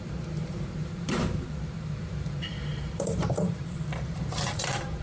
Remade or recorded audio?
remade